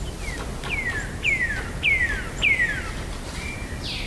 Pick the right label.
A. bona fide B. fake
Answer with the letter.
A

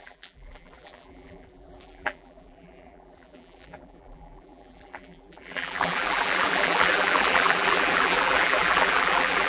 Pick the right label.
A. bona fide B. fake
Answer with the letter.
B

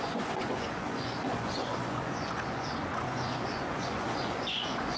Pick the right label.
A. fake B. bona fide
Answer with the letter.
A